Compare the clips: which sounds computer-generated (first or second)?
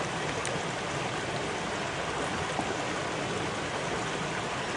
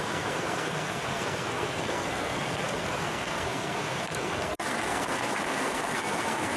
second